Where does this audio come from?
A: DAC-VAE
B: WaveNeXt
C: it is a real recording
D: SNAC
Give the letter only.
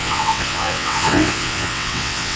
B